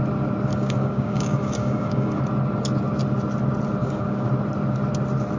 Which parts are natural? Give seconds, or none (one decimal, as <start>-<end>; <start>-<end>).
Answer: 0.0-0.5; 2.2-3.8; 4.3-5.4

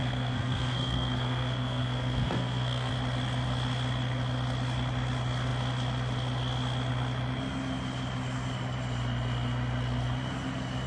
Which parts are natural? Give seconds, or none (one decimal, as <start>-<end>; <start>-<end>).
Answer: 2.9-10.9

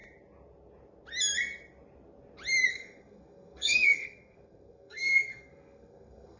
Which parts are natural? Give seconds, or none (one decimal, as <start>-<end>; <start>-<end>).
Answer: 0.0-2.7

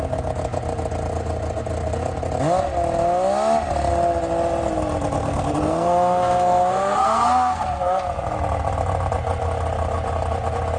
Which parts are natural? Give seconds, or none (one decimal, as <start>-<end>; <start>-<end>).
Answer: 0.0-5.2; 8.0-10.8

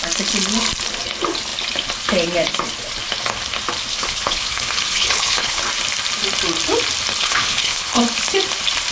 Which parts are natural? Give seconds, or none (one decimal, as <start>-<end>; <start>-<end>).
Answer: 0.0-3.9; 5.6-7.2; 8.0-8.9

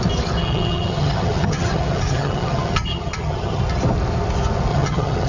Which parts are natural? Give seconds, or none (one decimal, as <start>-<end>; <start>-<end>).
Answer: 0.0-0.4; 3.6-4.7

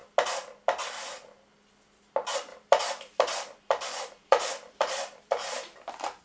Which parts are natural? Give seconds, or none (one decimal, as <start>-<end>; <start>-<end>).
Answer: 0.0-2.5

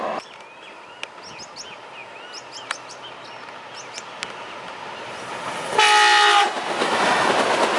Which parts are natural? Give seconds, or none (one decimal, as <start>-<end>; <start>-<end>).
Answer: 0.0-6.8; 7.3-7.8